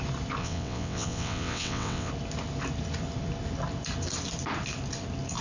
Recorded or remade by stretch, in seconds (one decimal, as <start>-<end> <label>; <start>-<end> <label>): 0.0-0.4 recorded; 0.4-2.1 remade; 2.1-5.4 recorded